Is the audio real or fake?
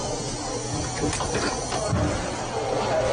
real